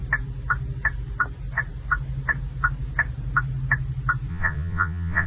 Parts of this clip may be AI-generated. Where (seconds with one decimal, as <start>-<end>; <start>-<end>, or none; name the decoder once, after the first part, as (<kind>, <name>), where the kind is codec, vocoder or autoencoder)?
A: 4.3-5.3 (vocoder, Vocos)